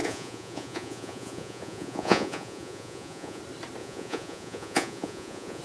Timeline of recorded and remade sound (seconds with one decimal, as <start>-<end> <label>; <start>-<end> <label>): 0.0-3.4 remade; 3.4-3.8 recorded; 3.8-5.6 remade